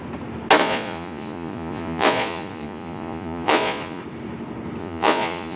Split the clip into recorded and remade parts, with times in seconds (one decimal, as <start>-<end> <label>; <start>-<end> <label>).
0.0-0.6 recorded; 0.6-4.0 remade; 4.0-4.8 recorded; 4.8-5.6 remade

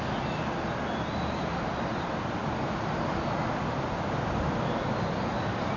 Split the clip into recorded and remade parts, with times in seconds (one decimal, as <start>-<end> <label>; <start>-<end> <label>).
0.0-5.8 recorded

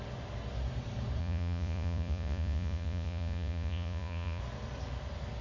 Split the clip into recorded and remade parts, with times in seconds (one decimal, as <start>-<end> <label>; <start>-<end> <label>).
0.0-1.2 recorded; 1.2-4.4 remade; 4.4-5.4 recorded

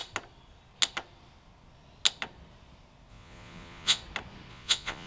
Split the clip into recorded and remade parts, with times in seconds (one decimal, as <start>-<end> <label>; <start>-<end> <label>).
0.0-3.1 recorded; 3.1-4.0 remade; 4.0-4.5 recorded; 4.5-5.1 remade